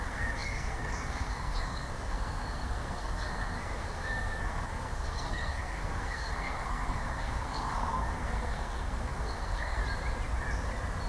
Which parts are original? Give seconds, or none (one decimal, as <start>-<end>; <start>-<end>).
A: 9.8-11.1